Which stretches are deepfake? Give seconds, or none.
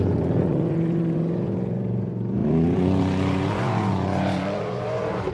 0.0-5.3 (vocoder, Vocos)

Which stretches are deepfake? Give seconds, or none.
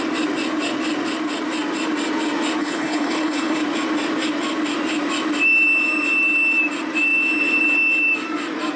2.6-3.6 (codec, HILCodec)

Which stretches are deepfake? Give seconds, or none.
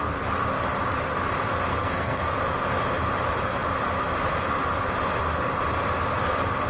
1.7-2.3 (codec, SNAC)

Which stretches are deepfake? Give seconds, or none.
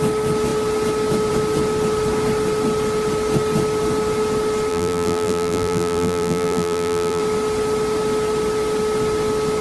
4.7-7.2 (vocoder, BigVGAN v2)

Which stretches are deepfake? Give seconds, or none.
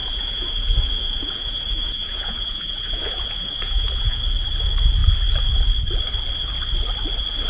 0.0-4.2 (vocoder, Vocos)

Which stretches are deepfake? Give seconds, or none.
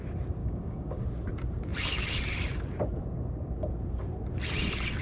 0.4-1.0 (codec, DAC)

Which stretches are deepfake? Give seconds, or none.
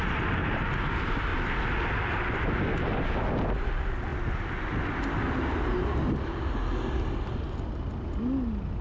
none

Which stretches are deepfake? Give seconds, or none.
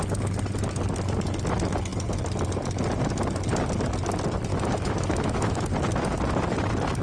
4.5-5.6 (autoencoder, DAC-VAE)